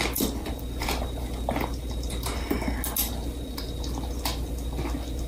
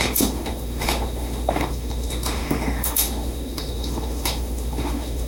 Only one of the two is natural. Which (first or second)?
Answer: first